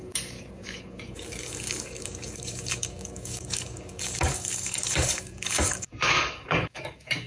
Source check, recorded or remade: remade